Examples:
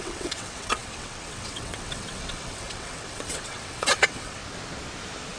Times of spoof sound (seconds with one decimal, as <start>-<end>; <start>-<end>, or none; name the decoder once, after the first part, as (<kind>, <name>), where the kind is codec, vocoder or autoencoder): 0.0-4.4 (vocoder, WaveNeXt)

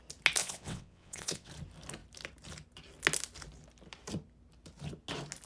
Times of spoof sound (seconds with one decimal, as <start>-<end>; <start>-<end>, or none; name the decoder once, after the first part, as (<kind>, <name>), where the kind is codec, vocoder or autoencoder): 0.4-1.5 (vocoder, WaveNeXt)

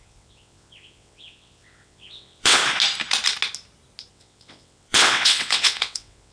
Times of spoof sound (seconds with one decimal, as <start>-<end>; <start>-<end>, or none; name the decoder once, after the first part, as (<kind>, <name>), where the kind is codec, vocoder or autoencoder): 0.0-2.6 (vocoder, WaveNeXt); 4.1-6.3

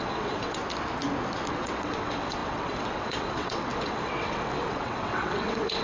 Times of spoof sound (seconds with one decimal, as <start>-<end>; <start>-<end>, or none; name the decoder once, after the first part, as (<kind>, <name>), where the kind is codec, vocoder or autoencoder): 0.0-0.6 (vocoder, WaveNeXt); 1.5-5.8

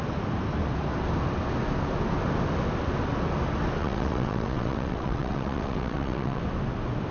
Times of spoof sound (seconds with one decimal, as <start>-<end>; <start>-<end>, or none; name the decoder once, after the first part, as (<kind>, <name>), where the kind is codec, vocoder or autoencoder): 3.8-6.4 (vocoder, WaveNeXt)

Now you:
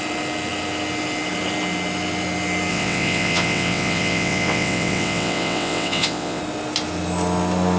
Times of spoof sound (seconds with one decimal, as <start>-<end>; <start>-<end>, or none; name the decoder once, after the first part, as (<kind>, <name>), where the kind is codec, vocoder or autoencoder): 2.7-6.4 (vocoder, WaveNeXt)